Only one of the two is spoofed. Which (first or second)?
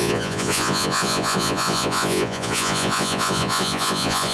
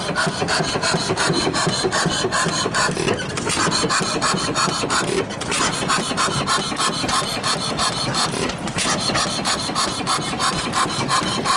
first